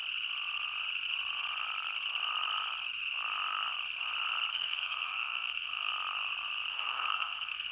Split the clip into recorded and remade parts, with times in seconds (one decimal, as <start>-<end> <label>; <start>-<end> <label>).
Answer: 0.0-4.5 recorded; 4.5-5.9 remade; 5.9-6.7 recorded; 6.7-7.7 remade